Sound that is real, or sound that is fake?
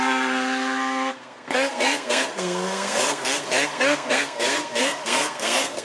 fake